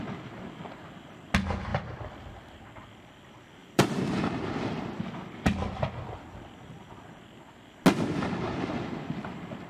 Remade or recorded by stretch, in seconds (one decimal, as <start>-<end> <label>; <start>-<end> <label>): 0.0-1.7 recorded; 1.7-2.6 remade; 2.6-3.6 recorded; 3.6-5.0 remade; 5.0-9.7 recorded